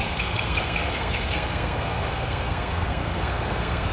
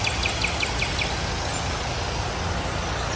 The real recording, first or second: second